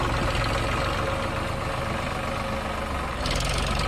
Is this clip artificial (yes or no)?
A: no